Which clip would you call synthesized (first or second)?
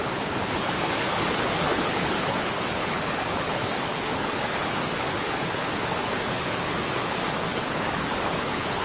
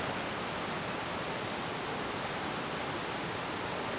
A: first